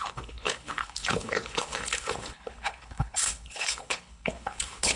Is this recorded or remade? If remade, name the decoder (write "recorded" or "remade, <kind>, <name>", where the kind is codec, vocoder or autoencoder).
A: remade, codec, HILCodec